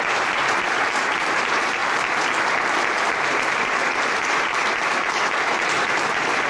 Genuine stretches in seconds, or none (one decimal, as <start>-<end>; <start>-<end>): 1.8-3.6

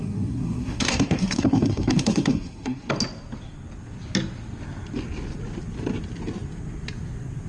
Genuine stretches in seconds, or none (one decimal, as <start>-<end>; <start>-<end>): 2.9-7.5

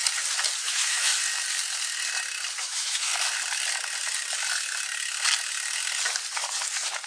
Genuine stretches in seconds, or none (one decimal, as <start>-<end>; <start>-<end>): 0.0-0.6; 1.1-2.6; 3.1-7.1

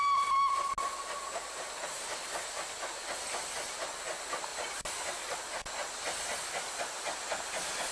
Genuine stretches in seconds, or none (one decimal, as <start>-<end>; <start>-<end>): 0.0-7.9

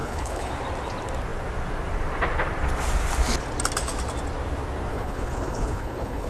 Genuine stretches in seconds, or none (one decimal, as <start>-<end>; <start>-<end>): 0.5-4.9